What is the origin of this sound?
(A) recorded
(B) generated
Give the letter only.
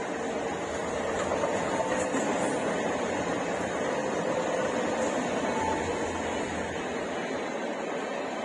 A